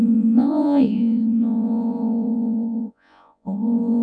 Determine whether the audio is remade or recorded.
remade